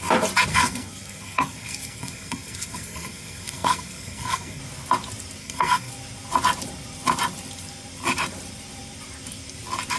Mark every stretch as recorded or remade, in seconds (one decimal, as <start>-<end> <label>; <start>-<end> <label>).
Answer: 0.0-0.5 recorded; 0.5-4.6 remade; 4.6-5.4 recorded; 5.4-5.9 remade; 5.9-10.0 recorded